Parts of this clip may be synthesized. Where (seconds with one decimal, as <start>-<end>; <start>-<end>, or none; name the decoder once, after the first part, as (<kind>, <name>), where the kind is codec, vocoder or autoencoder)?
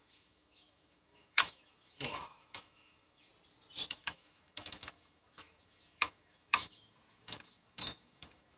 0.0-3.3 (autoencoder, DAC-VAE); 3.9-8.6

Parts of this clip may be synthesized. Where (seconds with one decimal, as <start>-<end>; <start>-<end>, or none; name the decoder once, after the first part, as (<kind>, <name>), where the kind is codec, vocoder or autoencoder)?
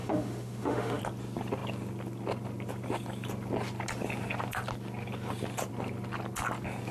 0.0-1.0 (autoencoder, DAC-VAE)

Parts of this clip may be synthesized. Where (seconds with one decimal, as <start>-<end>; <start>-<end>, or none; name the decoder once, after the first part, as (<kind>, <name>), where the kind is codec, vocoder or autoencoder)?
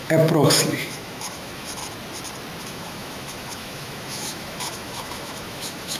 0.0-1.8 (autoencoder, DAC-VAE); 2.6-6.0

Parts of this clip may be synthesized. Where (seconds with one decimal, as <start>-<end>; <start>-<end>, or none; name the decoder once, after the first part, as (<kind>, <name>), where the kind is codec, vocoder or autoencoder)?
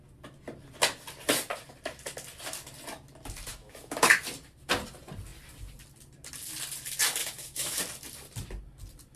3.5-4.2 (autoencoder, DAC-VAE); 7.2-7.8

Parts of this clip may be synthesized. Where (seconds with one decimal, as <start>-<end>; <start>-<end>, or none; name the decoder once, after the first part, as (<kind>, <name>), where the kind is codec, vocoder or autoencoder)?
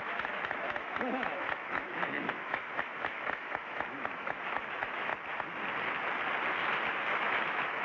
0.0-5.1 (autoencoder, DAC-VAE); 6.9-7.8